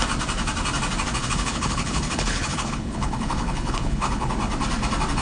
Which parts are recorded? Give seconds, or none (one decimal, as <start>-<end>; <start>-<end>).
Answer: 0.0-1.2; 4.3-5.2